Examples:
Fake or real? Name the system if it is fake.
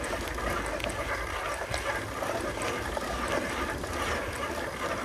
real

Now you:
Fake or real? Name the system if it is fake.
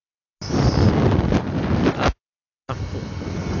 real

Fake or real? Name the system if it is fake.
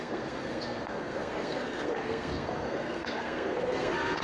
fake, codec, SNAC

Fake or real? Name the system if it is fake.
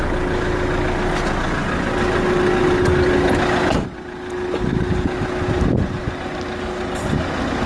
real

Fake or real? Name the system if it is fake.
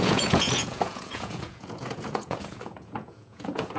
fake, vocoder, Vocos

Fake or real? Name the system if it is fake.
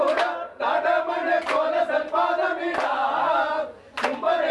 real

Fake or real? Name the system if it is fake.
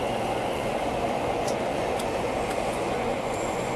fake, vocoder, Vocos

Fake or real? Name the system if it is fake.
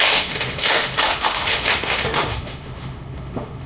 fake, autoencoder, DAC-VAE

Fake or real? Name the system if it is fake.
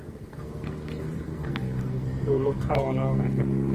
fake, codec, SNAC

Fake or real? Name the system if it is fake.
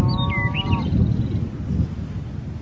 real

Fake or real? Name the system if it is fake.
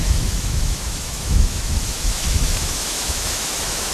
fake, autoencoder, DAC-VAE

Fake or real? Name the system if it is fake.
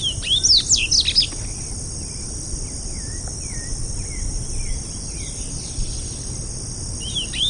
real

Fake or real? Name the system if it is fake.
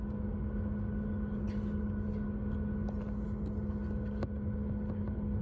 real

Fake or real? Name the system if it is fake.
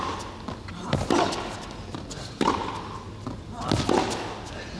real